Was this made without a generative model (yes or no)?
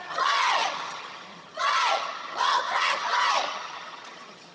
no